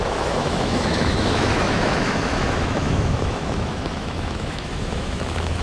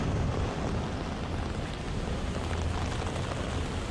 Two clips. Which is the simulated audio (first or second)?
first